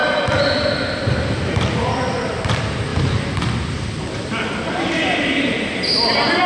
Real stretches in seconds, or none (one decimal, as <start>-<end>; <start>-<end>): 2.4-2.9